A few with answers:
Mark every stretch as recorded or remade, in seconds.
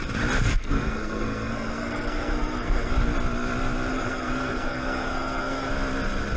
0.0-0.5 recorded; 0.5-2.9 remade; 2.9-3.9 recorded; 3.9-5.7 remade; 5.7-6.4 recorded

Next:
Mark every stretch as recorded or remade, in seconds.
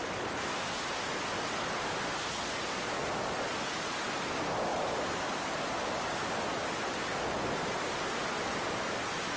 0.0-9.4 recorded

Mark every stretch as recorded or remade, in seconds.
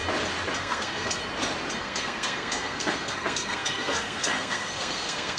0.0-0.6 recorded; 0.6-1.2 remade; 1.2-1.8 recorded; 1.8-5.4 remade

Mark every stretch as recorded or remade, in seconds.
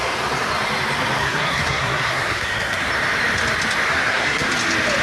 0.0-1.2 recorded; 1.2-2.9 remade; 2.9-3.9 recorded; 3.9-4.5 remade; 4.5-5.0 recorded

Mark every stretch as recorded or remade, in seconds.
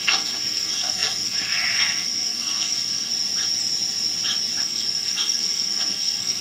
0.0-3.1 remade; 3.1-4.6 recorded; 4.6-6.4 remade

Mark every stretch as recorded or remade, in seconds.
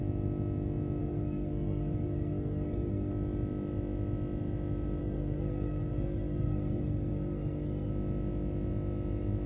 0.0-1.0 recorded; 1.0-3.1 remade; 3.1-5.0 recorded; 5.0-7.9 remade; 7.9-9.5 recorded